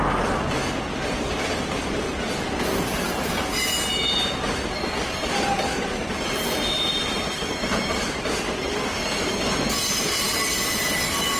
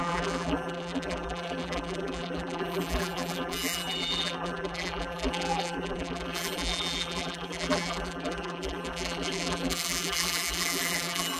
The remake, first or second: second